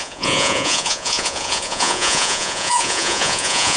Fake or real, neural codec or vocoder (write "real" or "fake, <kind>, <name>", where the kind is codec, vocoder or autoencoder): fake, vocoder, Vocos